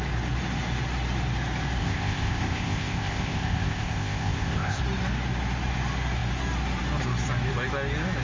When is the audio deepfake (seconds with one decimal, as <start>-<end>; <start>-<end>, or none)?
1.8-4.8